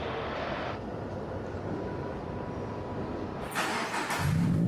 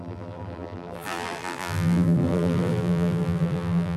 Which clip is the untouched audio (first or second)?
first